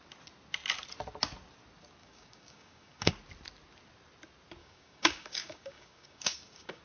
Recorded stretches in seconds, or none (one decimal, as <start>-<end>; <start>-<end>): 0.0-2.0; 3.1-4.6